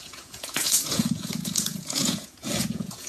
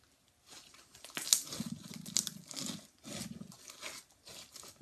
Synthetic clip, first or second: first